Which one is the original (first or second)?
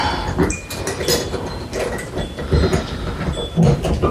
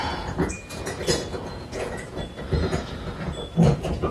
first